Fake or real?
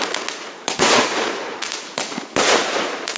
fake